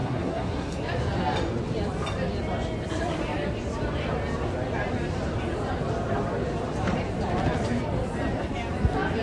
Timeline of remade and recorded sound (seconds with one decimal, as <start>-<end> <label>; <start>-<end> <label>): 0.0-0.8 remade; 0.8-9.2 recorded